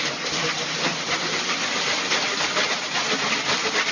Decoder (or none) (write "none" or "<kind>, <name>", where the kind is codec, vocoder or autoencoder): none